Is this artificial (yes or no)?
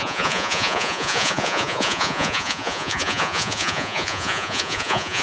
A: yes